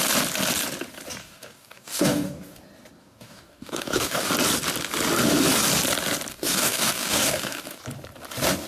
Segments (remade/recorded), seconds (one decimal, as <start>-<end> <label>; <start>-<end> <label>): 0.0-1.2 recorded; 1.2-2.6 remade; 2.6-3.0 recorded; 3.0-4.3 remade; 4.3-6.3 recorded; 6.3-7.8 remade; 7.8-8.7 recorded